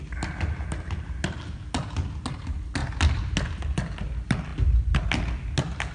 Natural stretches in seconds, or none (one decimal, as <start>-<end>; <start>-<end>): 0.0-5.9